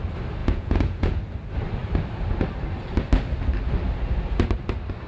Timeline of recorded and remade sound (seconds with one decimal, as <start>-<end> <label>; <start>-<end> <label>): 0.0-0.4 recorded; 0.4-1.2 remade; 1.2-5.1 recorded